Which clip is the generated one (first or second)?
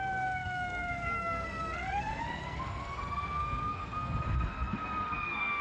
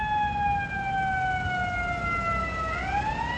first